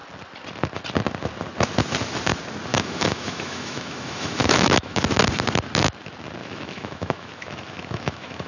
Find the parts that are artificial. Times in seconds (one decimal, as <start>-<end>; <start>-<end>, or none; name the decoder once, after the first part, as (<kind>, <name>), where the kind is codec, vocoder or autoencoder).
2.7-5.0 (autoencoder, DAC-VAE); 6.4-8.5